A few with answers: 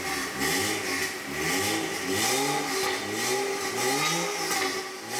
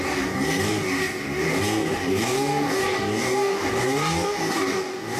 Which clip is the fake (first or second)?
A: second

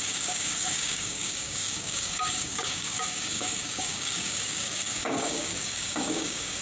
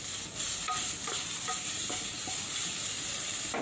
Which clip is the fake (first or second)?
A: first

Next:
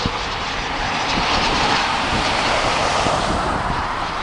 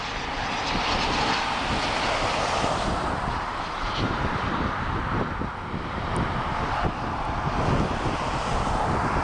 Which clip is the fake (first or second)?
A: first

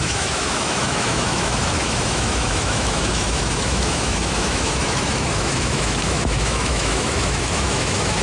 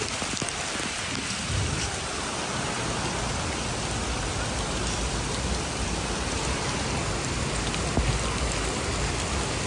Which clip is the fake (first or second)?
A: first